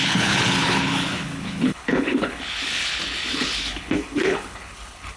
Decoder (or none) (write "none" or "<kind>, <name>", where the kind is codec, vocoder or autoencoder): codec, HILCodec